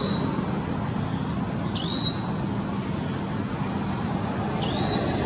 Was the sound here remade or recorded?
recorded